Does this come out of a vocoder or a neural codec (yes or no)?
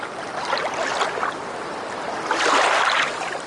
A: no